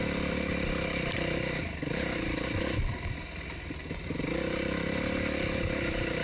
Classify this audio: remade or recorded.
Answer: recorded